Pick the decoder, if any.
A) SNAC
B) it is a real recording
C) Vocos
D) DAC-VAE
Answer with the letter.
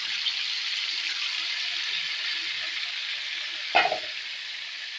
B